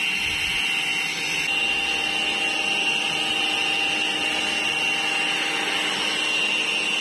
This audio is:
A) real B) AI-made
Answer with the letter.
A